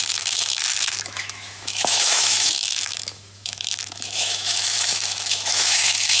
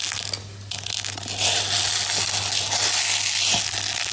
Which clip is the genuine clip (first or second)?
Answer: second